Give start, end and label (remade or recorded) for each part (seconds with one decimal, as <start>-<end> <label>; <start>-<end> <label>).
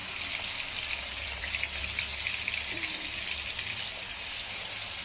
0.0-0.8 recorded; 0.8-2.1 remade; 2.1-2.7 recorded; 2.7-5.0 remade